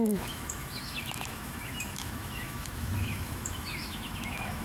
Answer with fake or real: fake